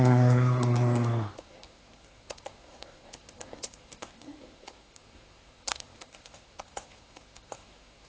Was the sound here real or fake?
fake